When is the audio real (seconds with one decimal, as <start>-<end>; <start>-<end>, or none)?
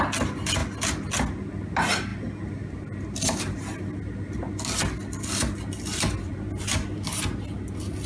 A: 0.0-8.1